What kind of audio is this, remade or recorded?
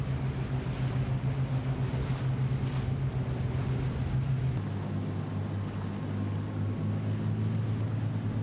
recorded